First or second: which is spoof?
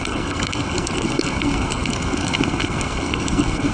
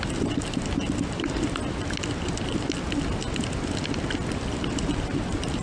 first